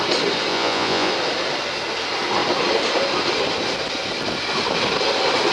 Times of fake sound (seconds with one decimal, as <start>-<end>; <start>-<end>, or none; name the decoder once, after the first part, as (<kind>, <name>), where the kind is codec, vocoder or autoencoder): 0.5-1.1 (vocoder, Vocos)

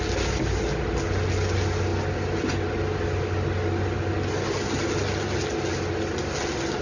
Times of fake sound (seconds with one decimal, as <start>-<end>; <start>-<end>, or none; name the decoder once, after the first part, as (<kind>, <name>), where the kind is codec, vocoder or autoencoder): none

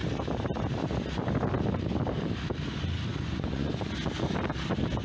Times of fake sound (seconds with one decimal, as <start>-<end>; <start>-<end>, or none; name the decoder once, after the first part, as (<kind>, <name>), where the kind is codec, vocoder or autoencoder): 3.1-3.7 (vocoder, Vocos)